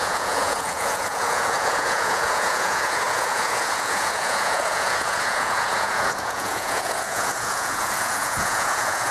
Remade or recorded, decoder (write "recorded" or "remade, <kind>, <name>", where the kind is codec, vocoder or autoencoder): remade, vocoder, Vocos